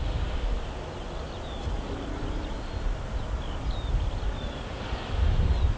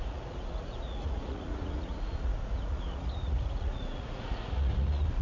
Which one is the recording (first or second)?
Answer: first